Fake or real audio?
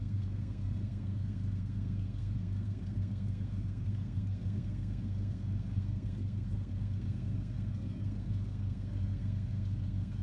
fake